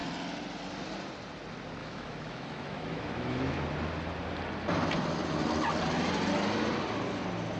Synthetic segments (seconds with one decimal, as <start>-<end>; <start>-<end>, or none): 1.8-3.6